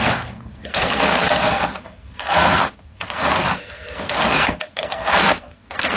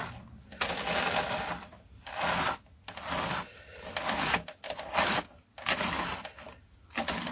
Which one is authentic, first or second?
second